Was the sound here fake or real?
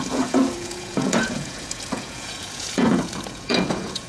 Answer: fake